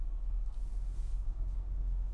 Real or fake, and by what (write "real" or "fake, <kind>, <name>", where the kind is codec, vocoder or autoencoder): fake, codec, SNAC